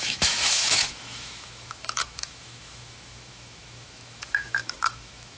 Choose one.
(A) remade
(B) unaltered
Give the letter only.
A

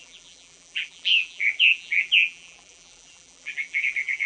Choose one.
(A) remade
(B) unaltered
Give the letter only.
A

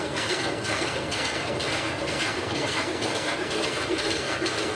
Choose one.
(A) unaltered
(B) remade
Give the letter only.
B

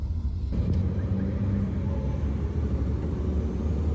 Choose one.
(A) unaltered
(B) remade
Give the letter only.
A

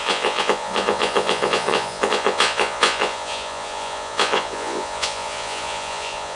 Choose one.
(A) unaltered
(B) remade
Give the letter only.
B